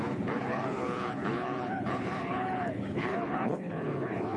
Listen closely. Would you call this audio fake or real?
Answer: fake